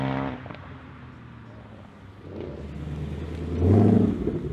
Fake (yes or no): no